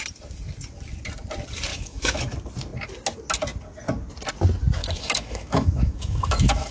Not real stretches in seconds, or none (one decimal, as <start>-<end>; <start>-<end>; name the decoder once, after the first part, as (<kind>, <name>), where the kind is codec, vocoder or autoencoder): 1.7-2.2 (autoencoder, DAC-VAE); 4.8-6.7